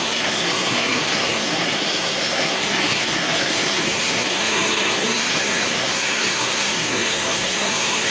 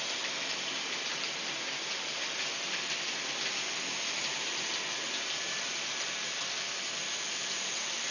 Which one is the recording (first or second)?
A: second